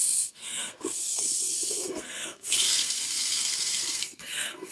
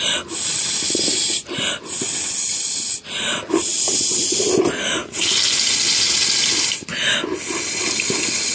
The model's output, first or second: first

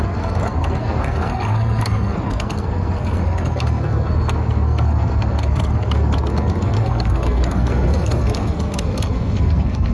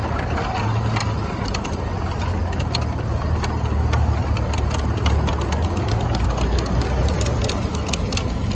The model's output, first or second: first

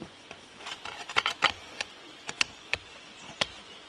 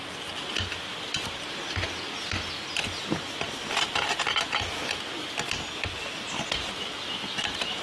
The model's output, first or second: first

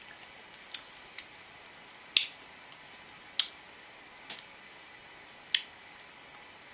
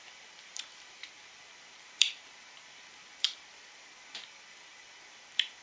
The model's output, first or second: second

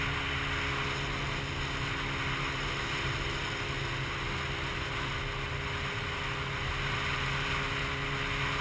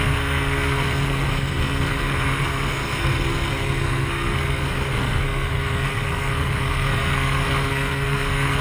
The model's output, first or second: second